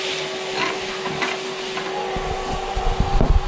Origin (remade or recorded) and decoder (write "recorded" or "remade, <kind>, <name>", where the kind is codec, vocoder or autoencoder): recorded